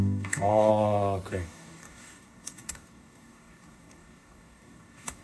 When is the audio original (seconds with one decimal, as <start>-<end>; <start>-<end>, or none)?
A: 0.7-1.3